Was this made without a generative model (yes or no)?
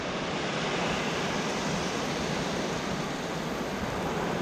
yes